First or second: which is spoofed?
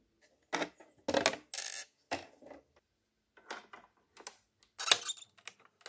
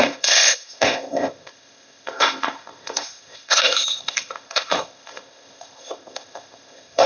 second